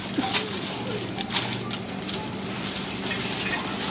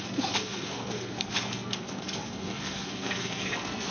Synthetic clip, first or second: second